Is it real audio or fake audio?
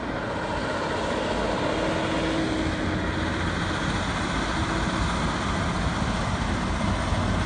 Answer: real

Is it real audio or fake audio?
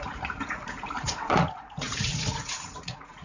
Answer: fake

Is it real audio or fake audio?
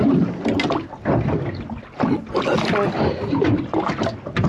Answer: real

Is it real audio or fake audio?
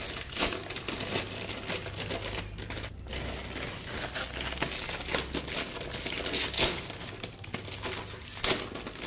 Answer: real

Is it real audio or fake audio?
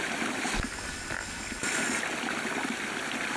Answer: real